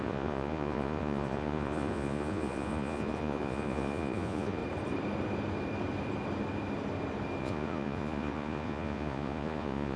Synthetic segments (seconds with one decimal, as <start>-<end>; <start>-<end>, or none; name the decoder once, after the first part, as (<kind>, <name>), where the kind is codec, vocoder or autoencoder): 0.0-4.6 (vocoder, Vocos); 7.4-10.0